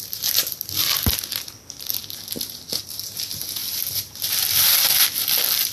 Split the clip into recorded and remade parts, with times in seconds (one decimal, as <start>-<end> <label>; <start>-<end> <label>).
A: 0.0-5.7 recorded